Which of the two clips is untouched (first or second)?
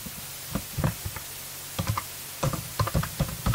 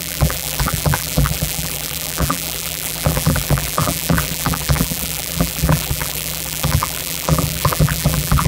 first